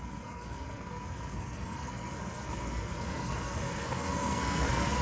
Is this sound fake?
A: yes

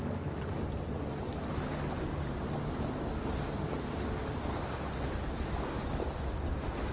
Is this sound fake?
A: no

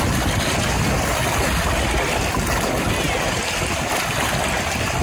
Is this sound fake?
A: no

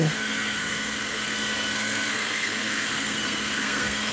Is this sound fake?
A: yes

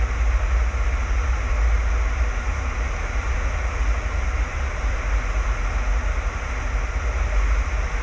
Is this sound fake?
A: no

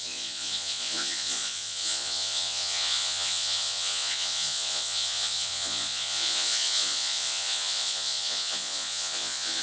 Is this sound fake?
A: yes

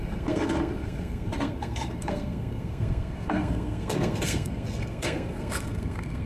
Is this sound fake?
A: yes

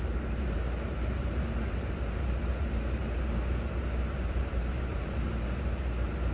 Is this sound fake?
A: yes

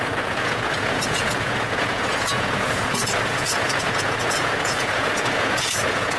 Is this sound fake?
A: yes